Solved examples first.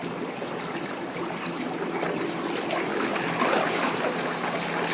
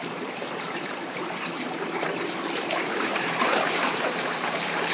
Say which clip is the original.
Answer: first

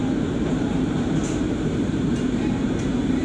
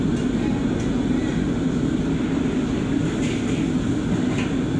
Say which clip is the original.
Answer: second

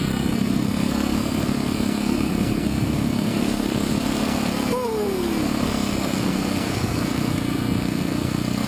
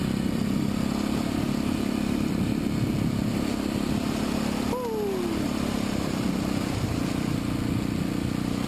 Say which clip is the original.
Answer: second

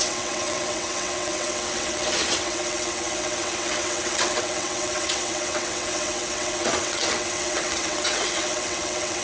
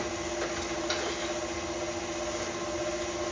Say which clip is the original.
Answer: second